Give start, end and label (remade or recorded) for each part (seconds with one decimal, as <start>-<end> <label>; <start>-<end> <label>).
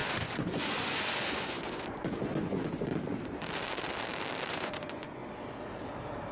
0.0-2.9 remade; 2.9-4.5 recorded; 4.5-5.2 remade; 5.2-6.3 recorded